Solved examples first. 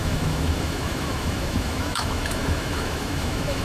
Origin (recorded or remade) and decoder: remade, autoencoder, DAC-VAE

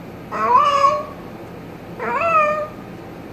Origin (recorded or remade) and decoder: recorded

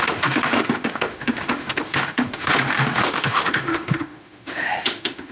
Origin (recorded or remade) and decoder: remade, autoencoder, DAC-VAE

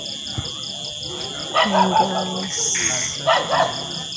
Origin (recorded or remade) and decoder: recorded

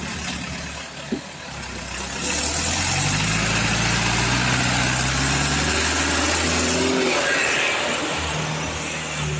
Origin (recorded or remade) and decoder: recorded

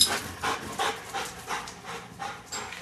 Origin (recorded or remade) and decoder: recorded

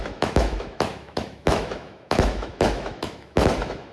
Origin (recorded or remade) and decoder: remade, autoencoder, DAC-VAE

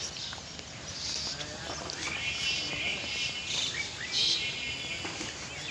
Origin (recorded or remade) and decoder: recorded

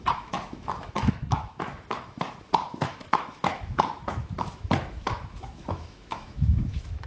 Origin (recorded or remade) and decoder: remade, autoencoder, DAC-VAE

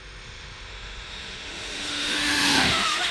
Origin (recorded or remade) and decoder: remade, autoencoder, DAC-VAE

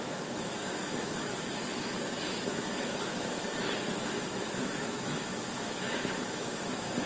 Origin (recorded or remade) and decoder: remade, autoencoder, DAC-VAE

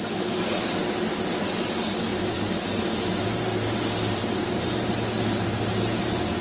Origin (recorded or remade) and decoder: recorded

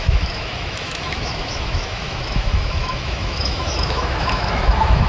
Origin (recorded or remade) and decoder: remade, autoencoder, DAC-VAE